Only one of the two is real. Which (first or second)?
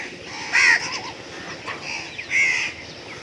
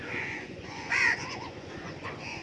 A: first